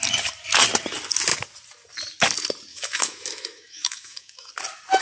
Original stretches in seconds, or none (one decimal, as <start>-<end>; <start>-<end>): 0.0-2.7; 4.5-5.0